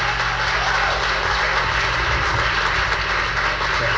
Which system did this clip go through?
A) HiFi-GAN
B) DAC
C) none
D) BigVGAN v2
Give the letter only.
C